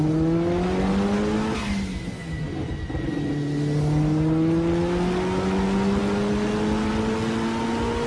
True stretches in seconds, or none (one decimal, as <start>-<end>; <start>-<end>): 0.0-8.1